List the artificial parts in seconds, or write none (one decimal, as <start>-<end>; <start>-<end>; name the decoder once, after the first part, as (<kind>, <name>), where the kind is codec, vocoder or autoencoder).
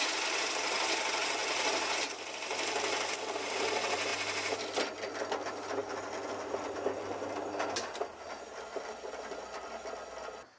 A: none